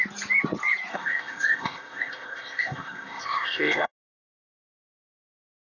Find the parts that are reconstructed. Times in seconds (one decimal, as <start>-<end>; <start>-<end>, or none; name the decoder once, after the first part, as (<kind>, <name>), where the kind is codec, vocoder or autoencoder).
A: 0.9-3.9 (codec, ZipCodec)